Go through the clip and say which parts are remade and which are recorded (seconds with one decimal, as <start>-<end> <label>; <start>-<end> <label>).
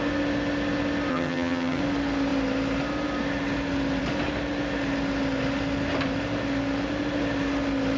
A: 0.0-1.1 recorded; 1.1-1.8 remade; 1.8-8.0 recorded